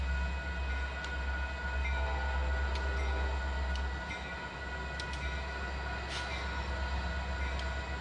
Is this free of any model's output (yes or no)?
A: yes